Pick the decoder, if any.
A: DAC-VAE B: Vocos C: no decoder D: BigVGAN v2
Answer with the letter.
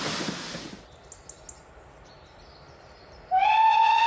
C